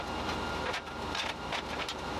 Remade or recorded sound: recorded